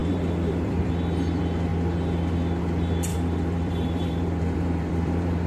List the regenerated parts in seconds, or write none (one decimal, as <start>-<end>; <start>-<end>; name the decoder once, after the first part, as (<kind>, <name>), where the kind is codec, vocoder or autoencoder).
0.0-0.9 (vocoder, BigVGAN v2); 3.1-5.5